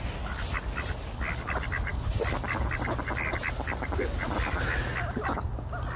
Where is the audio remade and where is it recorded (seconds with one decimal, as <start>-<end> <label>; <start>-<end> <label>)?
0.0-6.0 recorded